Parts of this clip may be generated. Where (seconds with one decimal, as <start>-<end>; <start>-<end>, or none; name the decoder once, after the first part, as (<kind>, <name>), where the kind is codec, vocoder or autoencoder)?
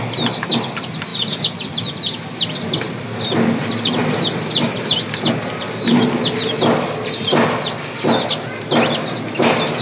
none